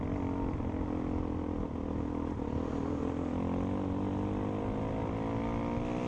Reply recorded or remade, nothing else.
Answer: recorded